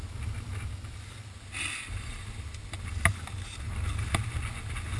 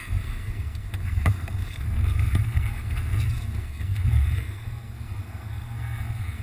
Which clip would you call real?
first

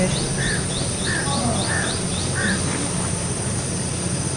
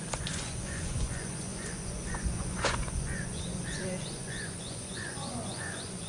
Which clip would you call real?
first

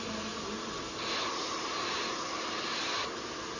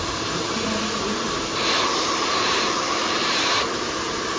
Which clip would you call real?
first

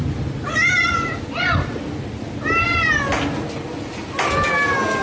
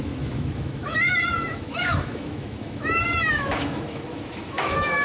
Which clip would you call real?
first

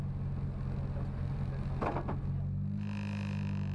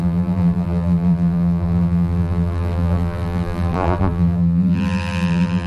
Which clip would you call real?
first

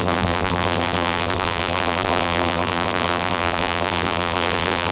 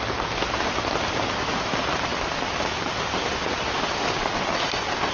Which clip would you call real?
second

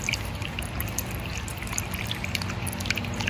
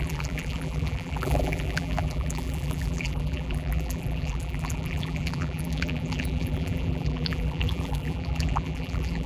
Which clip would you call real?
first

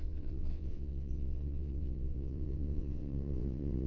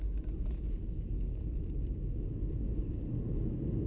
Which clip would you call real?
second